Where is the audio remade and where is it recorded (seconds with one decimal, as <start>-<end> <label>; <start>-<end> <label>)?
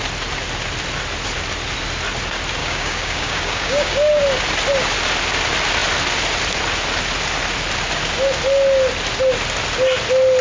0.0-2.6 recorded; 2.6-4.2 remade; 4.2-10.4 recorded